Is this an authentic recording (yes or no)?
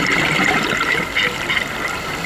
yes